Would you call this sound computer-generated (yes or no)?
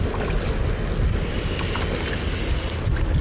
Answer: no